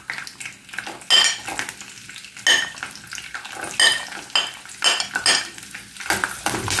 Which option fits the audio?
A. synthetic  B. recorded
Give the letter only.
B